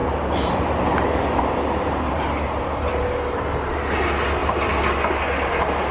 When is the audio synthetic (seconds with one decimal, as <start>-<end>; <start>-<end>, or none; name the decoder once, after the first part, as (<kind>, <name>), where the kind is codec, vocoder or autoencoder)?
none